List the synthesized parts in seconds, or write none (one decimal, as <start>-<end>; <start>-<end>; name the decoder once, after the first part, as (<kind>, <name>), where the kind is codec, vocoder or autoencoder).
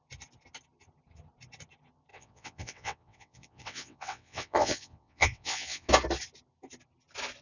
2.1-5.9 (vocoder, WaveNeXt)